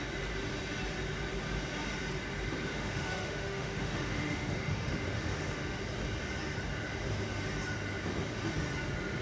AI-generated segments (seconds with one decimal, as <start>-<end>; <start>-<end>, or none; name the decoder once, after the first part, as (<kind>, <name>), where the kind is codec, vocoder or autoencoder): 2.7-5.8 (autoencoder, DAC-VAE)